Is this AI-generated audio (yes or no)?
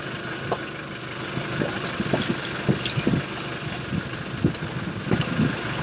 no